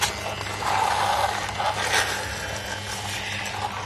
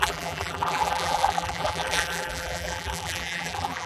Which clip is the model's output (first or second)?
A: second